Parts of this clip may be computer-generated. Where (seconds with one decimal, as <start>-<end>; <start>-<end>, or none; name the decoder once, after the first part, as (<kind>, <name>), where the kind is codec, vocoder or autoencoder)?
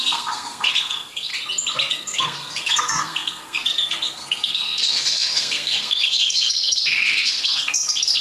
0.0-1.3 (codec, SNAC); 1.9-8.2